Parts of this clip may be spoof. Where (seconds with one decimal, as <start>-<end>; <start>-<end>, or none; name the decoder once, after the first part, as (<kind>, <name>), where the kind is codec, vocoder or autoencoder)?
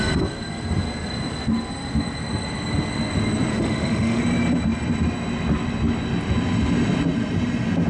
3.5-4.2 (autoencoder, DAC-VAE)